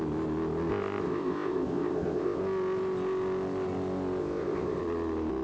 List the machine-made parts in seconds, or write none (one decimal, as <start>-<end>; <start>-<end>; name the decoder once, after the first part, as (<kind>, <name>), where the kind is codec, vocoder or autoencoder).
0.7-2.4 (codec, ZipCodec); 4.2-4.8